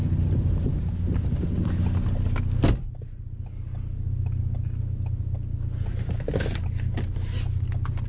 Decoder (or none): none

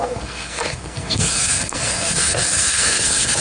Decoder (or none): codec, SNAC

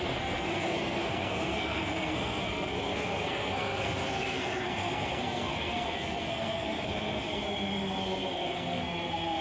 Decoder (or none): codec, SNAC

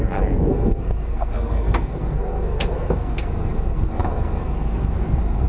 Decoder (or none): codec, SNAC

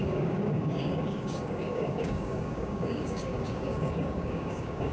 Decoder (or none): codec, DAC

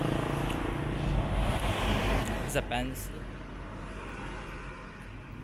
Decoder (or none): none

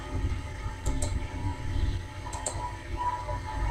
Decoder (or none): codec, DAC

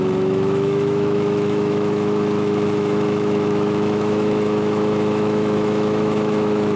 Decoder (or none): autoencoder, DAC-VAE